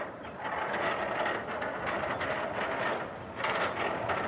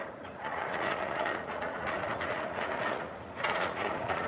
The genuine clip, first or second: first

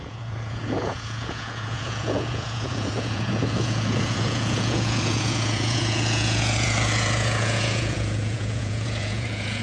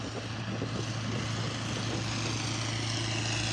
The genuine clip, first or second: second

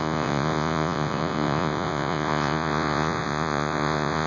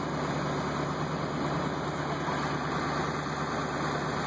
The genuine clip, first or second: second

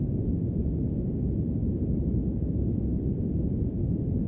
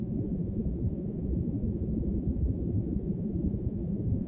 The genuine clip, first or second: first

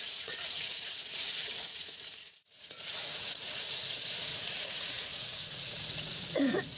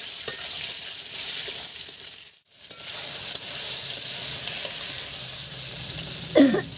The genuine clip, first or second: second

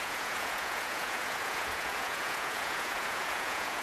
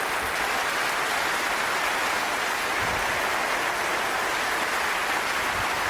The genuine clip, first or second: second